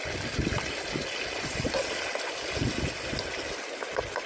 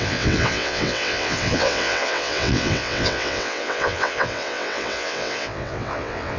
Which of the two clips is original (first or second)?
first